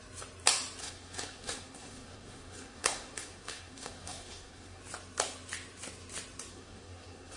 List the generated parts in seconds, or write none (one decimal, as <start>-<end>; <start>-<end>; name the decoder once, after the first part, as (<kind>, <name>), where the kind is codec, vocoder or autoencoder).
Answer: 0.8-4.8 (codec, SNAC); 6.5-7.4